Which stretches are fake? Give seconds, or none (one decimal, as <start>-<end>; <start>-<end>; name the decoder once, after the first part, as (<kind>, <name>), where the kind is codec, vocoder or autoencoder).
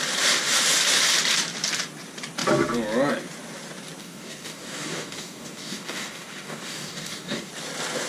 4.0-7.5 (codec, DAC)